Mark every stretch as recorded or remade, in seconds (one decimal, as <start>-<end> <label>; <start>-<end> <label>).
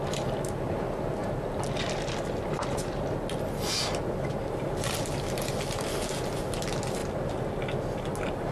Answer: 0.0-8.5 recorded